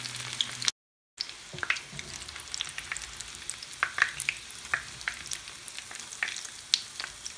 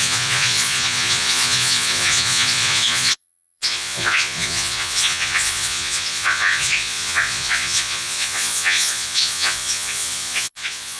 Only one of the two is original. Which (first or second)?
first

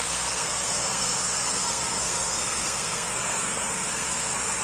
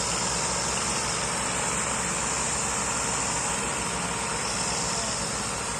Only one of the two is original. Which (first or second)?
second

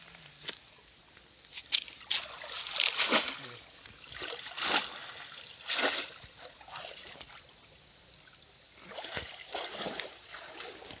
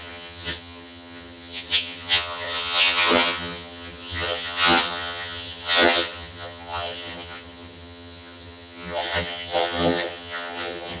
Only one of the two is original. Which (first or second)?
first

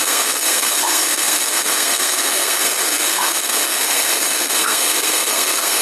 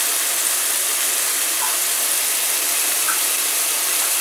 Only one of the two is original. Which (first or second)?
second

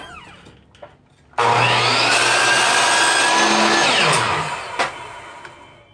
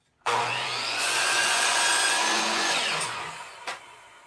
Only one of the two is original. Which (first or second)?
first